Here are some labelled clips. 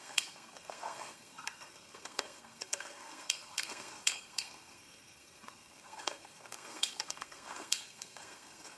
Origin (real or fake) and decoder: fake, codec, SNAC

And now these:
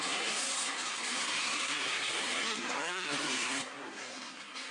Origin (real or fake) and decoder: fake, codec, SNAC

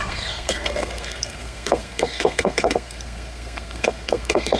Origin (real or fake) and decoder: fake, codec, SNAC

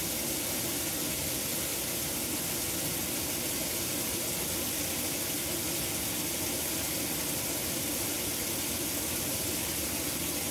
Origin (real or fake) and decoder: real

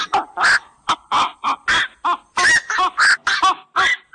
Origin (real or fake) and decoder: real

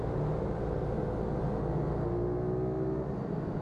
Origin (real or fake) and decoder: real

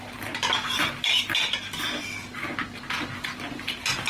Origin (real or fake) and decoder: real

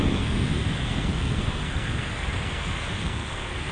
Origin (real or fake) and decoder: fake, codec, SNAC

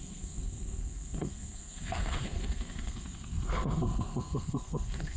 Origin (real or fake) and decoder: fake, codec, SNAC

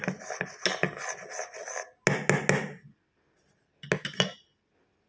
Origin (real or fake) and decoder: real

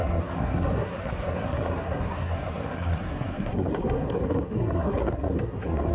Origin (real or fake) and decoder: fake, codec, SNAC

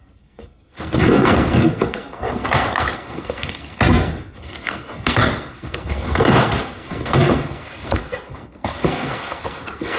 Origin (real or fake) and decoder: fake, codec, SNAC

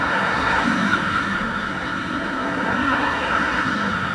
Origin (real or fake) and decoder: fake, codec, SNAC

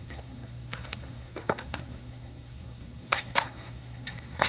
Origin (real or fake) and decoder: fake, codec, SNAC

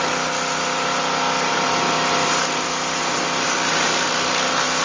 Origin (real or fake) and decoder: real